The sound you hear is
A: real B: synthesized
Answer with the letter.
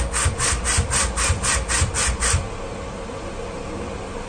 A